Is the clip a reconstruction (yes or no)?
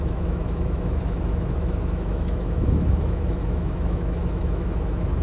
yes